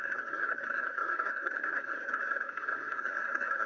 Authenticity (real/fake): fake